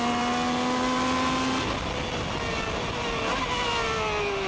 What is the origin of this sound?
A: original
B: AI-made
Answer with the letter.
A